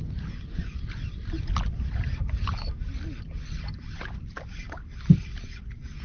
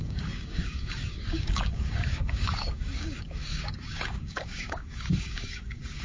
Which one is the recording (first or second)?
first